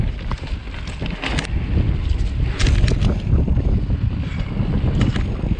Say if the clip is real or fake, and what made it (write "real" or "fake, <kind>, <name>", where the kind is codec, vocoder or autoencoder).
real